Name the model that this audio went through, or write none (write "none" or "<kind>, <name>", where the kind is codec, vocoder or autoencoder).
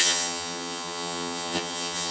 vocoder, HiFi-GAN